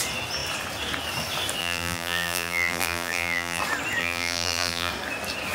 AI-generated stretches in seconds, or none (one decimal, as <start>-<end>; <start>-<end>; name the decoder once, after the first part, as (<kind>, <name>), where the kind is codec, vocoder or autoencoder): 1.6-3.6 (vocoder, BigVGAN v2); 4.0-4.9

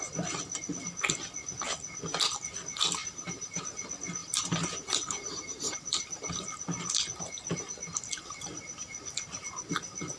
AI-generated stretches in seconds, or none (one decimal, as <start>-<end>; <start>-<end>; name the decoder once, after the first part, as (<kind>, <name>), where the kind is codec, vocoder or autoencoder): 3.0-3.6 (vocoder, BigVGAN v2); 4.2-6.3

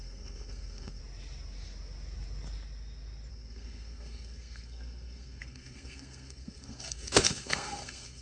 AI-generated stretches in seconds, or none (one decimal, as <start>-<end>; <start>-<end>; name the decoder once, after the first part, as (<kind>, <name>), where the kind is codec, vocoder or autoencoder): 0.0-1.0 (codec, SNAC); 3.3-8.2

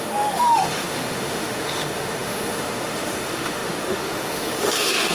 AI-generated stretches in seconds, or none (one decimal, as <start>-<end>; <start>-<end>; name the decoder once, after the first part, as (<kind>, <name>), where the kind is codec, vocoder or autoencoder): 0.0-5.1 (autoencoder, DAC-VAE)

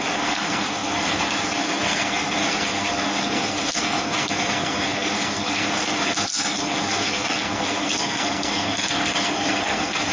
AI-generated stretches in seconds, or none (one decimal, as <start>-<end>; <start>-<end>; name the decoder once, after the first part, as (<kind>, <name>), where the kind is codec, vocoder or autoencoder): 0.0-10.1 (codec, SNAC)